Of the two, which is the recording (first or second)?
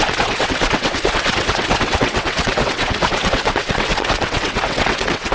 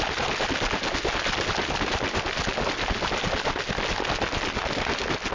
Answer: second